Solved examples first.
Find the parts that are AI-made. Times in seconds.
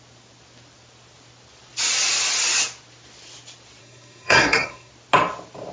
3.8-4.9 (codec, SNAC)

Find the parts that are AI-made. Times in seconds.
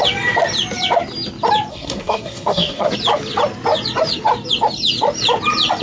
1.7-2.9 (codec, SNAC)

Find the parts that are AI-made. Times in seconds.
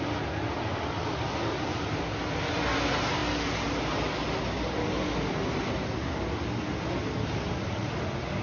none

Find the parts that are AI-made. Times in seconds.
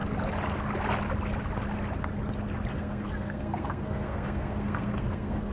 2.7-5.5 (codec, SNAC)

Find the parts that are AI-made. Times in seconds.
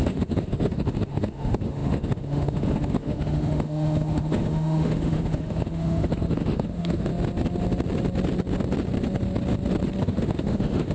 0.0-7.1 (autoencoder, DAC-VAE); 10.0-10.9